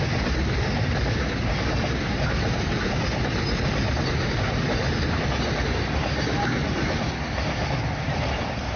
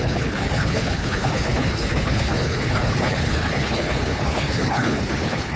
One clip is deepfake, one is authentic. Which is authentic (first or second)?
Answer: first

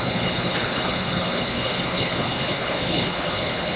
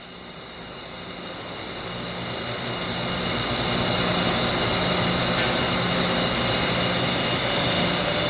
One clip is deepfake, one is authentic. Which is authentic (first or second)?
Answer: second